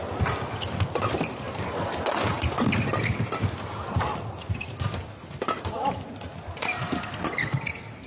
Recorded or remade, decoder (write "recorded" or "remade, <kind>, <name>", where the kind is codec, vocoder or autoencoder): recorded